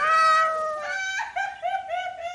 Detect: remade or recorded recorded